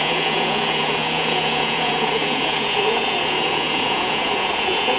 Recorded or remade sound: remade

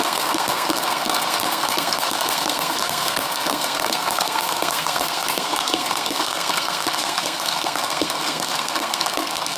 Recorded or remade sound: remade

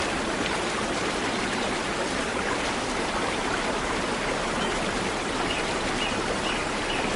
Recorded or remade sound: recorded